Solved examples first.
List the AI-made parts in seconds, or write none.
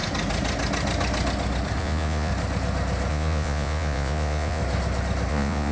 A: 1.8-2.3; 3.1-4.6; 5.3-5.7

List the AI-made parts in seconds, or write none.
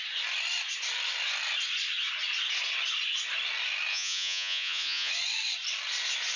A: 3.9-5.1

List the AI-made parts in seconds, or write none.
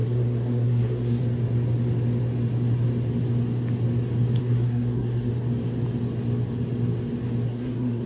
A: 0.0-1.2; 4.4-5.3; 7.5-8.1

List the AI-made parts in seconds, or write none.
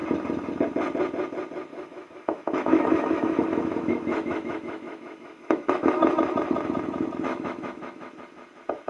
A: 1.7-6.1; 7.3-8.1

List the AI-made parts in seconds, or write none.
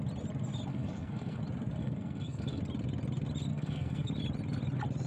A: 0.7-1.4; 1.8-2.6; 3.5-4.1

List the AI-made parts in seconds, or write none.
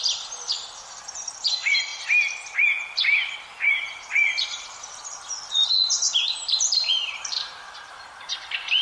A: 0.0-1.9; 3.4-8.8